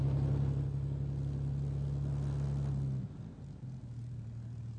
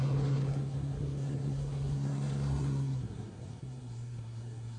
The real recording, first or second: first